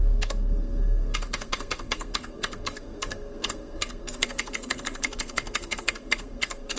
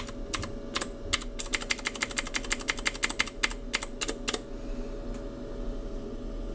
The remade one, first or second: first